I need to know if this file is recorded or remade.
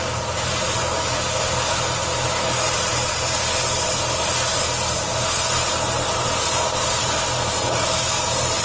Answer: recorded